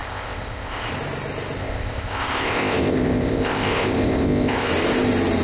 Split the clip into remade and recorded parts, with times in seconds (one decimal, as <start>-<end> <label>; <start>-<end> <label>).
0.0-0.9 remade; 0.9-1.6 recorded; 1.6-4.7 remade; 4.7-5.4 recorded